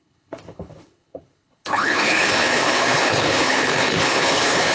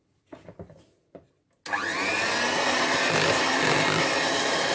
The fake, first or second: first